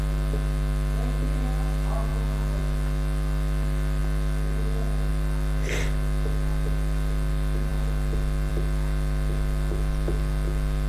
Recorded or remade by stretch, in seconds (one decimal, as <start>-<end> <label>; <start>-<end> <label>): 0.0-10.9 recorded

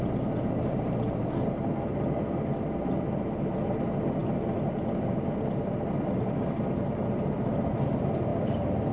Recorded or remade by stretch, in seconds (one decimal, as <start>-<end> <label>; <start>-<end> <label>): 0.0-8.9 recorded

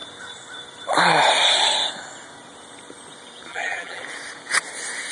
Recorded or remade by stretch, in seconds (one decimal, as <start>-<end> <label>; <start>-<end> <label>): 0.0-3.5 recorded; 3.5-4.0 remade; 4.0-5.1 recorded

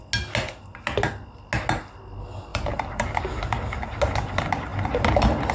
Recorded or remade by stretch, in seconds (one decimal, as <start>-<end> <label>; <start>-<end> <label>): 0.0-2.5 recorded; 2.5-3.2 remade; 3.2-5.5 recorded

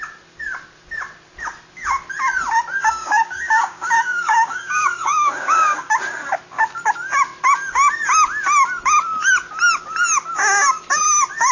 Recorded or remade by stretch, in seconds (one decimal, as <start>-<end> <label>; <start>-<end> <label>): 0.0-2.8 recorded; 2.8-5.9 remade; 5.9-11.5 recorded

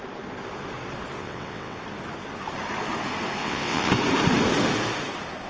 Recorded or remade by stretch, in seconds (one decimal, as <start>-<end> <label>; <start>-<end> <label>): 0.0-1.2 recorded; 1.2-1.8 remade; 1.8-3.4 recorded; 3.4-3.9 remade; 3.9-5.5 recorded

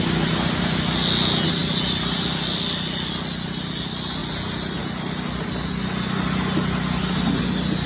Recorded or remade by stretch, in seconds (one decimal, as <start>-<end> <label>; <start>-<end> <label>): 0.0-7.9 recorded

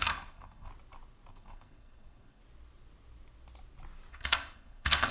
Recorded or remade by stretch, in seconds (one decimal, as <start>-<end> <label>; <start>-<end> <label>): 0.0-0.7 remade; 0.7-1.3 recorded; 1.3-2.4 remade; 2.4-4.1 recorded; 4.1-5.1 remade